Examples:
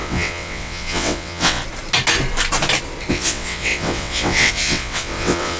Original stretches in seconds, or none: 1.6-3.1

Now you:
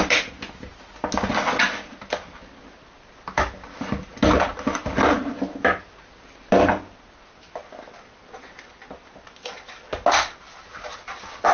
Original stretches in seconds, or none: 0.0-11.5